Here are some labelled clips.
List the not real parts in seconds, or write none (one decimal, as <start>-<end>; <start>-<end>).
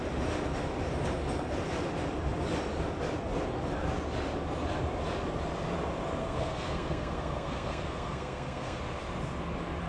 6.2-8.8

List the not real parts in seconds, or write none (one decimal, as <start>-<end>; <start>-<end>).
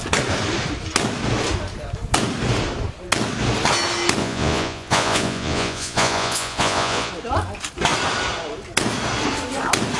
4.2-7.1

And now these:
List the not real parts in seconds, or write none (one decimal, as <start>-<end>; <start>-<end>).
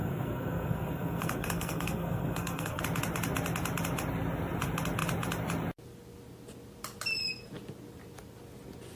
0.0-2.8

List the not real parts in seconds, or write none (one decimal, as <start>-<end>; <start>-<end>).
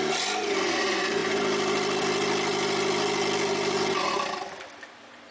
none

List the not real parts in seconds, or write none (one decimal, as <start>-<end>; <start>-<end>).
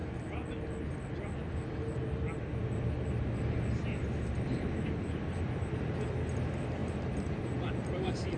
4.3-8.4